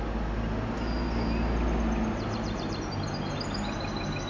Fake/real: real